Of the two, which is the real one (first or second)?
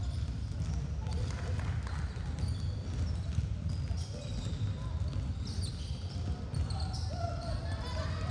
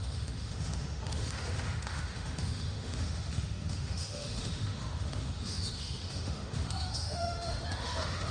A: first